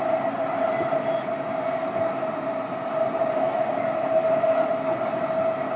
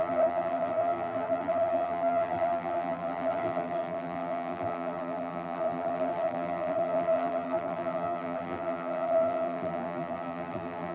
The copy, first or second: second